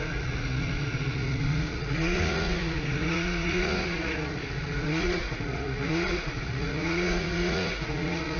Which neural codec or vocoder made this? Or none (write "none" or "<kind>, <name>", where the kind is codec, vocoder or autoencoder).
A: vocoder, Vocos